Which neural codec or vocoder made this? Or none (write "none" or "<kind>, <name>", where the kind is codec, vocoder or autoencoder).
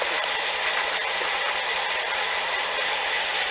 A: none